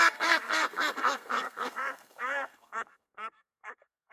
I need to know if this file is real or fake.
fake